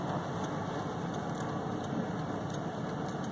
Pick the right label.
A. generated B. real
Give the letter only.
B